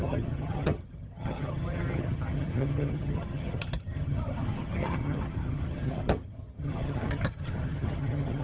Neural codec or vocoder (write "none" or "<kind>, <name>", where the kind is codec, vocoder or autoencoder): vocoder, HiFi-GAN